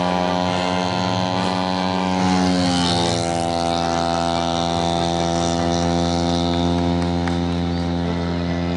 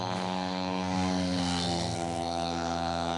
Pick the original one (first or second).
first